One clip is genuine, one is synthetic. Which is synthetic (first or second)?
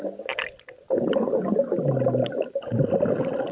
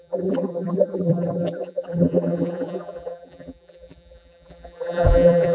second